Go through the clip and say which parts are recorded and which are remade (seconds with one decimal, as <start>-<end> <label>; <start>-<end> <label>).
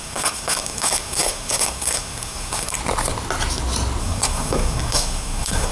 0.0-2.8 remade; 2.8-4.0 recorded; 4.0-5.7 remade